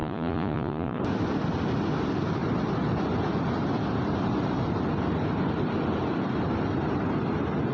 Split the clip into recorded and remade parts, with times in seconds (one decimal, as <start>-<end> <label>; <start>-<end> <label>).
0.0-1.0 remade; 1.0-7.7 recorded

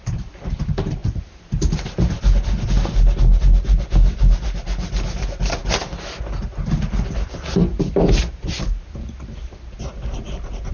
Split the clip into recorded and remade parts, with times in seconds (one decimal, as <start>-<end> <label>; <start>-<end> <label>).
0.0-10.7 recorded

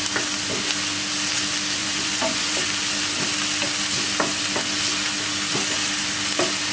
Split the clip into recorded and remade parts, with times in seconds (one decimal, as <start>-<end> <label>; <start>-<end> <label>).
0.0-1.8 recorded; 1.8-2.6 remade; 2.6-6.7 recorded

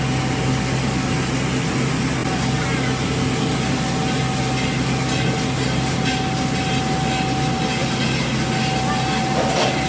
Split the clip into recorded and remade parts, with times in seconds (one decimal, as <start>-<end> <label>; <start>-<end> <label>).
0.0-9.9 recorded

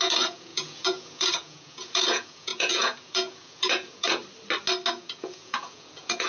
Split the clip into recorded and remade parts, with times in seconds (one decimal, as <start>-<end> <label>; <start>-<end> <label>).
0.0-4.2 remade; 4.2-4.9 recorded; 4.9-6.3 remade